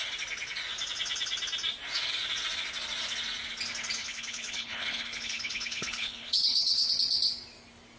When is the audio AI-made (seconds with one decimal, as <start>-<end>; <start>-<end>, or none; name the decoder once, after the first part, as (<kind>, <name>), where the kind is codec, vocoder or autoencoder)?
4.0-6.9 (codec, HILCodec)